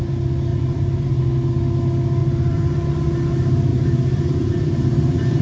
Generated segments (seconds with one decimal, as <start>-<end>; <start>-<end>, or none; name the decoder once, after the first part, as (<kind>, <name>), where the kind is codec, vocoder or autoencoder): 0.5-1.2 (vocoder, BigVGAN v2); 2.2-2.9; 3.7-5.4